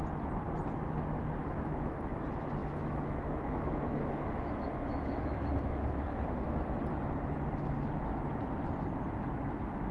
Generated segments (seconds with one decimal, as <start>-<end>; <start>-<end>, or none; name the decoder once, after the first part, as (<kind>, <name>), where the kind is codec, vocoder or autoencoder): 1.4-2.1 (autoencoder, DAC-VAE); 2.6-6.8